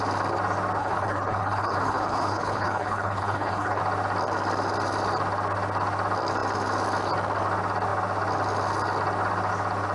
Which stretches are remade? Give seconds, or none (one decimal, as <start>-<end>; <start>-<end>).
0.8-3.8

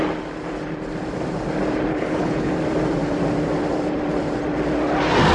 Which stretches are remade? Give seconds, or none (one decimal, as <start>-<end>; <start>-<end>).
1.9-2.5

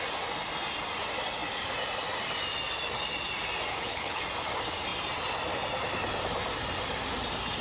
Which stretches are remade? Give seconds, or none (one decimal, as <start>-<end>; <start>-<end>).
3.7-4.2

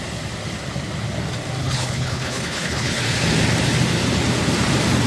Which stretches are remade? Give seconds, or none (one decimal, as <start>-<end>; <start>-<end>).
1.6-3.0